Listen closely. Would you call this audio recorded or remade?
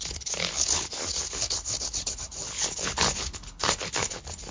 remade